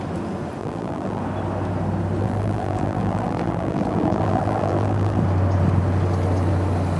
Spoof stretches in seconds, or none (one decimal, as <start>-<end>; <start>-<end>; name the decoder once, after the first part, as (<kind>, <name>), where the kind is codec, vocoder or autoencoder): 0.6-1.2 (vocoder, BigVGAN v2); 2.2-5.2